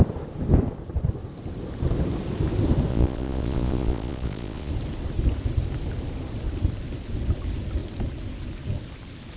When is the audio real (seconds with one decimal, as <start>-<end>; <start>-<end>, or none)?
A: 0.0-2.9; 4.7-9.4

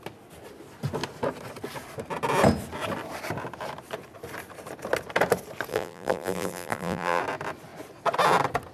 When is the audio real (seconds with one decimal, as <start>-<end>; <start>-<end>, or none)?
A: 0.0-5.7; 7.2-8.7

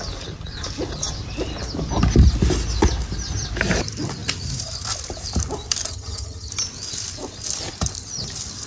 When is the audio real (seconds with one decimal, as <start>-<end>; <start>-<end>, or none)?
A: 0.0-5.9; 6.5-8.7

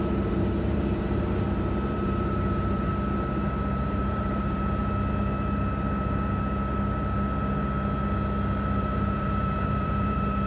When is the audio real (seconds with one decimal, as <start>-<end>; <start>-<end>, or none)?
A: 2.9-4.0; 4.8-8.8